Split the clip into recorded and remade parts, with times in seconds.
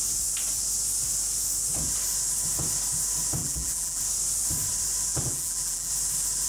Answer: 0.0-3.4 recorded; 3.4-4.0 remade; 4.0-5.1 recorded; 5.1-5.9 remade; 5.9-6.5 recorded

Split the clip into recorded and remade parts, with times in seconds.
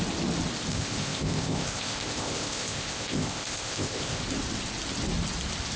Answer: 0.0-0.7 recorded; 0.7-4.2 remade; 4.2-5.8 recorded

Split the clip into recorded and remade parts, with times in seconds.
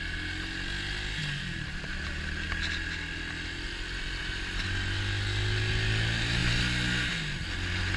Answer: 0.0-8.0 recorded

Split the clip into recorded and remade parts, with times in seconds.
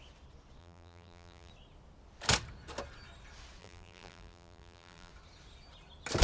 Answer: 0.0-0.6 recorded; 0.6-1.5 remade; 1.5-3.6 recorded; 3.6-5.1 remade; 5.1-6.2 recorded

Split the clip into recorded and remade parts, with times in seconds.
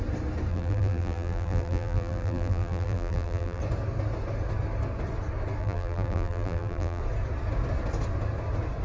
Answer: 0.0-0.5 recorded; 0.5-3.6 remade; 3.6-5.6 recorded; 5.6-7.0 remade; 7.0-8.8 recorded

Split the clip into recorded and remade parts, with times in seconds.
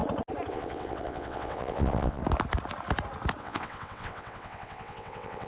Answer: 0.0-0.5 recorded; 0.5-2.2 remade; 2.2-3.4 recorded; 3.4-5.5 remade